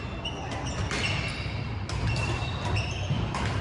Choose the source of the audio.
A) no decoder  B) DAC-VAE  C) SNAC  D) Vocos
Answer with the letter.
A